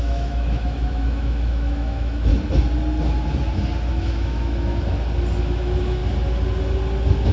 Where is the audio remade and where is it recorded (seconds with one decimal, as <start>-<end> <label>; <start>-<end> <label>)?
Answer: 0.0-2.3 remade; 2.3-3.9 recorded; 3.9-4.7 remade; 4.7-5.4 recorded; 5.4-6.0 remade; 6.0-7.3 recorded